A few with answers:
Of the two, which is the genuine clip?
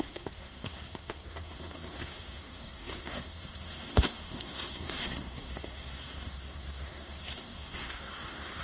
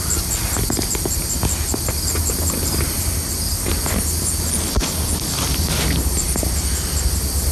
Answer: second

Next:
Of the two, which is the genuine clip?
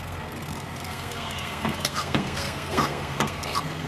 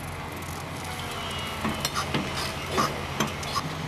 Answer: second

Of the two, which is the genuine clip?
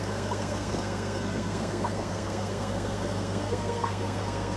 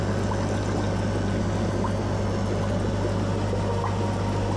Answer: second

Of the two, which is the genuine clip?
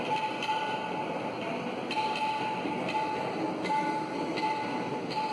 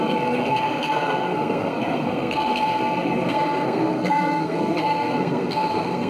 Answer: first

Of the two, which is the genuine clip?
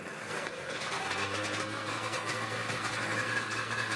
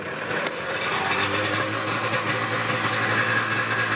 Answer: second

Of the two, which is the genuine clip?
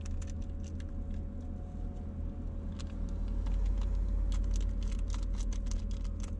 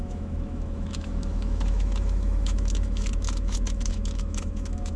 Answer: first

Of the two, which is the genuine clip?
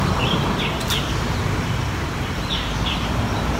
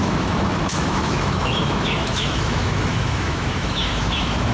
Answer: first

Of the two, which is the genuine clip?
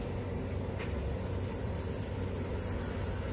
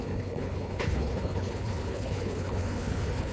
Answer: first